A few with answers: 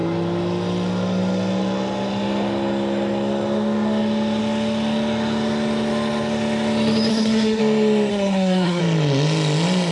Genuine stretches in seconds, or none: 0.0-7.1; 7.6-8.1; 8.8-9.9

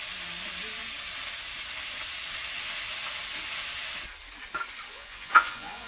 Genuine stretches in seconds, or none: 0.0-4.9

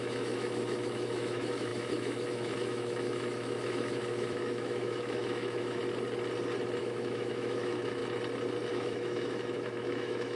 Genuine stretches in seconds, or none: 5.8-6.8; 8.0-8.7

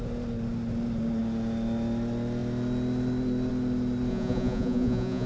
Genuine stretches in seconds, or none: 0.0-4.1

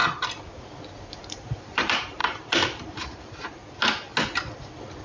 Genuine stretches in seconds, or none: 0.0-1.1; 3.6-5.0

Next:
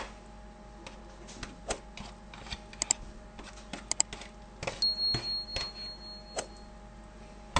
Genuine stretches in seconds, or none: 0.0-7.6

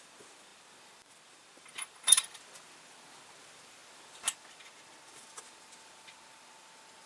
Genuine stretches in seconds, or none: 0.0-7.1

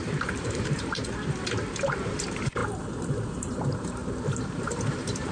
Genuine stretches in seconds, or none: 2.6-3.3